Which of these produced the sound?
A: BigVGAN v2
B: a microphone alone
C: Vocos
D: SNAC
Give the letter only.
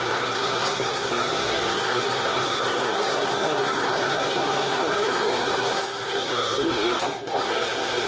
D